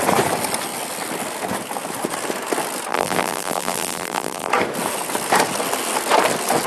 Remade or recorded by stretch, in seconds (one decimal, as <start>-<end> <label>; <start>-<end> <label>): 0.0-2.9 recorded; 2.9-4.5 remade; 4.5-6.7 recorded

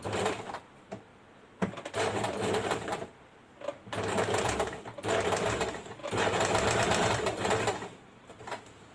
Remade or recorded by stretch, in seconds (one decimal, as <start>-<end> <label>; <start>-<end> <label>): 0.0-1.1 remade; 1.1-4.4 recorded; 4.4-8.9 remade

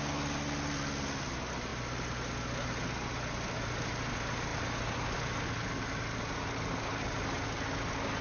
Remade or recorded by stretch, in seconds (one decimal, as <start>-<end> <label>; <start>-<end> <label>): 0.0-8.2 recorded